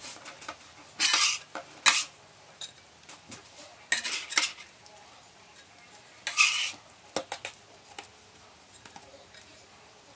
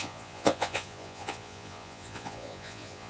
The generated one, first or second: second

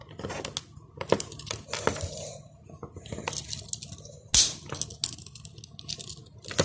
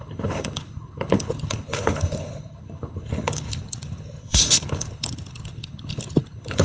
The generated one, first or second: second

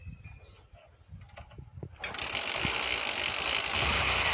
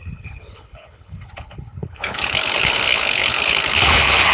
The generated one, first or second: second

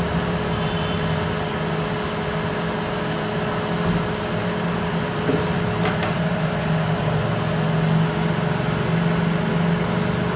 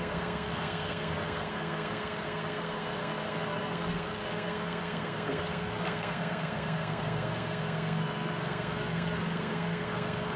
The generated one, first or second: second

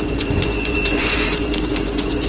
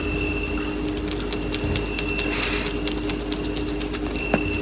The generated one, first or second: first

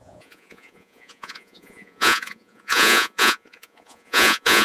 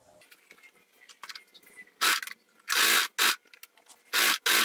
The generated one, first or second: first